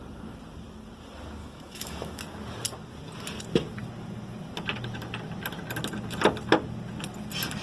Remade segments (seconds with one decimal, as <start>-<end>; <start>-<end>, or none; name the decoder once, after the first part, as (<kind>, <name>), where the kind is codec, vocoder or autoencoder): 1.4-2.2 (autoencoder, DAC-VAE)